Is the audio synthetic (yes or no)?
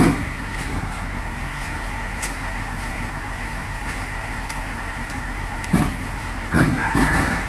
yes